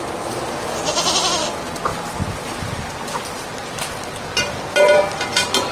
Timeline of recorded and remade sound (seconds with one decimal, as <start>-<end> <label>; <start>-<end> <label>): 0.0-5.7 recorded